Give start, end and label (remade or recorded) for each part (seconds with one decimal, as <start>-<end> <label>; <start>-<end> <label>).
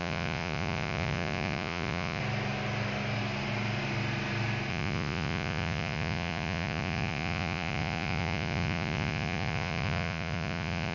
0.0-2.2 remade; 2.2-4.7 recorded; 4.7-10.9 remade